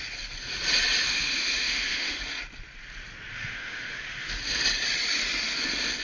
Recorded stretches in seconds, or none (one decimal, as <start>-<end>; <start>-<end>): 0.0-1.1; 2.2-3.3; 4.4-6.0